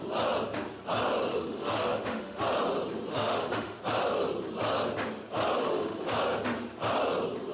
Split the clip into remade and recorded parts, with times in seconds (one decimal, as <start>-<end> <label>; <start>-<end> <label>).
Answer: 0.0-1.3 recorded; 1.3-2.4 remade; 2.4-3.1 recorded; 3.1-3.8 remade; 3.8-5.6 recorded; 5.6-6.1 remade; 6.1-7.5 recorded